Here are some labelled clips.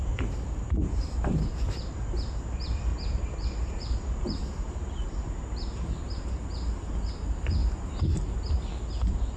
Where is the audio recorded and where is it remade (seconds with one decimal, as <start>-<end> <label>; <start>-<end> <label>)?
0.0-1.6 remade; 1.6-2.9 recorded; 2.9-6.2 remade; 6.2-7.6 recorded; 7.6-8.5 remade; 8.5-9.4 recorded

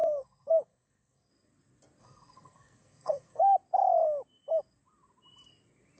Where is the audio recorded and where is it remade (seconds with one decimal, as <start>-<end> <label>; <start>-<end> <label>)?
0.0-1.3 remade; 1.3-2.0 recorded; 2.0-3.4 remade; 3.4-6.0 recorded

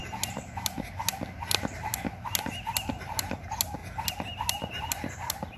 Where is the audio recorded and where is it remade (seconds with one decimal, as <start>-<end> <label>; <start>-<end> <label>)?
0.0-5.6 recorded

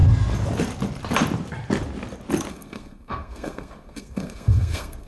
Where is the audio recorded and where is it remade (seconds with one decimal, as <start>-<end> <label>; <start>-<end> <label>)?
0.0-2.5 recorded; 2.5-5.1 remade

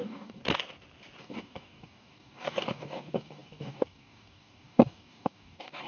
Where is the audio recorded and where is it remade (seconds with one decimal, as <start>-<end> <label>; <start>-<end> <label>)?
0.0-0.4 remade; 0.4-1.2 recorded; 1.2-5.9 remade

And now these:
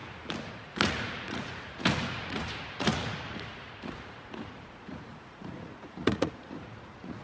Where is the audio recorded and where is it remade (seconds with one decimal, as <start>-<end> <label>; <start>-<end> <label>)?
0.0-0.5 recorded; 0.5-7.2 remade

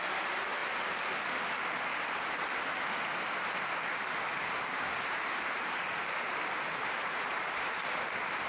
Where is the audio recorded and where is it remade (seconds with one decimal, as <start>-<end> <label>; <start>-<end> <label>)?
0.0-4.3 recorded; 4.3-8.5 remade

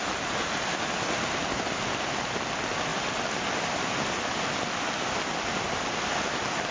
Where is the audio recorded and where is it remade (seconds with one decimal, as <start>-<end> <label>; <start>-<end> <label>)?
0.0-6.7 recorded